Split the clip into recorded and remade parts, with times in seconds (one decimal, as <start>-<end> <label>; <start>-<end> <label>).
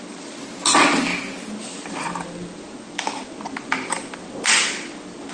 0.0-5.3 recorded